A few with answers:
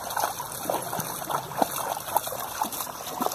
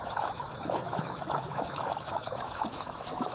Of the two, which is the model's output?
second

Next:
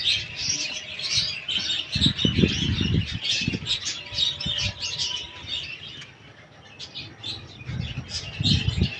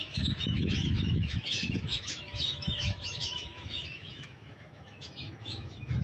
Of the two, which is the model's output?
second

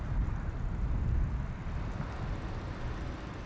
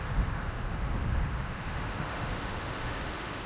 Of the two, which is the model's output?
second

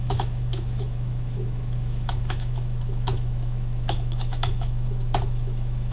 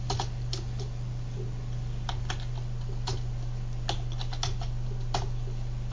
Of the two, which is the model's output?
first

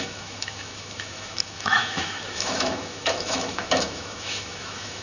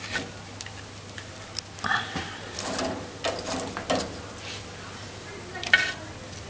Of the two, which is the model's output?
first